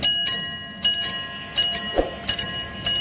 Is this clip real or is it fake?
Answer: real